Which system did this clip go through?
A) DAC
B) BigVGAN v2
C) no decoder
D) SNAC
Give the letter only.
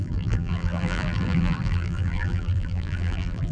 B